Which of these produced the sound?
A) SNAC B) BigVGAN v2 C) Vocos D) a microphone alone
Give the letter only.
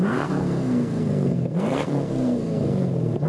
A